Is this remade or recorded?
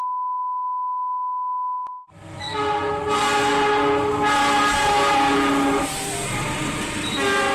recorded